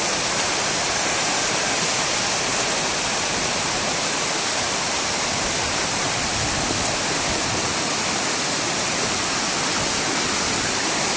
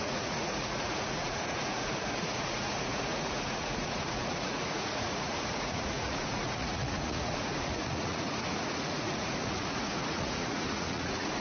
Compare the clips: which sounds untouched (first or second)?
first